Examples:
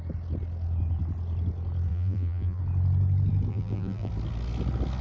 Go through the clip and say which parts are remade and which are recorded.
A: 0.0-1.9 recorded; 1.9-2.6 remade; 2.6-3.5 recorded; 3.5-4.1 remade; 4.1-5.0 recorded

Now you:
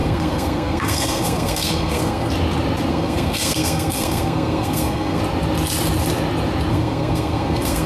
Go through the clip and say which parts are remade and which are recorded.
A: 0.0-2.3 remade; 2.3-2.9 recorded; 2.9-5.2 remade; 5.2-6.7 recorded; 6.7-7.9 remade

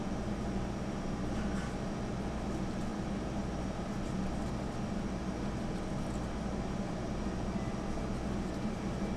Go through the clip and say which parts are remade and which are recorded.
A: 0.0-9.2 recorded

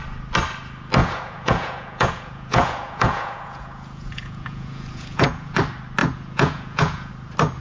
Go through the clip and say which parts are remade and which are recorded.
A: 0.0-1.0 recorded; 1.0-5.6 remade; 5.6-6.0 recorded; 6.0-7.1 remade; 7.1-7.6 recorded

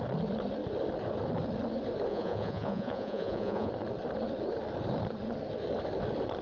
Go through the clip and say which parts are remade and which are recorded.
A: 0.0-2.1 recorded; 2.1-3.7 remade; 3.7-6.4 recorded

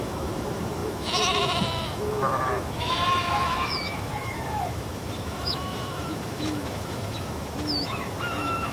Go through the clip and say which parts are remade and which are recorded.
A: 0.0-8.7 remade